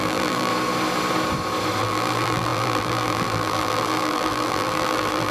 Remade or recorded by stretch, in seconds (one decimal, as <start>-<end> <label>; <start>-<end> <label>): 0.0-0.5 remade; 0.5-1.8 recorded; 1.8-5.3 remade